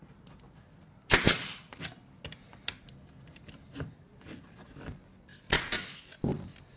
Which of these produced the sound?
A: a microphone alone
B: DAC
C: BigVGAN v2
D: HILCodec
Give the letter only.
A